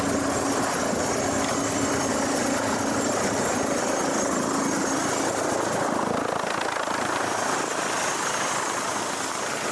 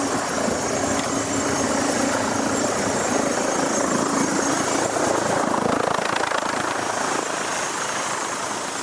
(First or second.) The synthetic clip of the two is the second